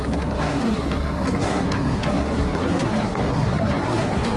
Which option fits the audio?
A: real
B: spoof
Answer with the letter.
B